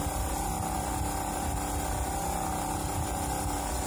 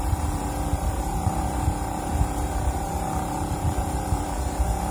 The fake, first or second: second